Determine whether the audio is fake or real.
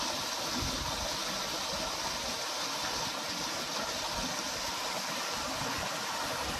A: real